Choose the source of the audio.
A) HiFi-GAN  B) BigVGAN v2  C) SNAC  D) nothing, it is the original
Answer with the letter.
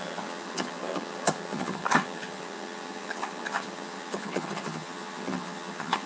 A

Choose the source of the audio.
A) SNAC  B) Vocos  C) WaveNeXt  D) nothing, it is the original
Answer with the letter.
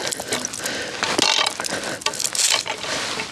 D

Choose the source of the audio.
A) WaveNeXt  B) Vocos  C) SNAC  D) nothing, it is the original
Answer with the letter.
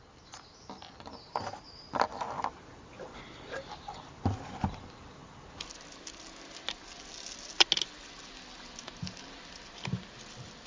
D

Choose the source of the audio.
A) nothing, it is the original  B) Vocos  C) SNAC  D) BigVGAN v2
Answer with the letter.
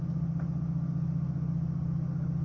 A